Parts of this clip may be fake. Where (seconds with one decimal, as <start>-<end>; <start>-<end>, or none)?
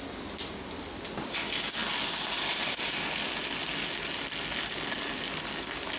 none